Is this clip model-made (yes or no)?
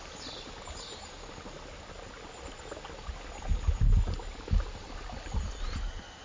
no